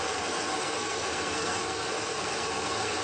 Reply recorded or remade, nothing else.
remade